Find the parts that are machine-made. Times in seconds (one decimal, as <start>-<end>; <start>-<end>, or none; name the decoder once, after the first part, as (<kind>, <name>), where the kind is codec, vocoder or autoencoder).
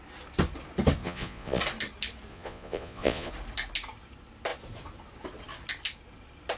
1.0-1.6 (vocoder, Vocos); 2.3-3.3